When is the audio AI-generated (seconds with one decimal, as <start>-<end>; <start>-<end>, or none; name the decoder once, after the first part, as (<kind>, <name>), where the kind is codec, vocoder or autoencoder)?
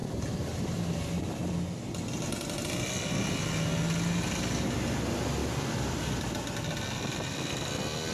none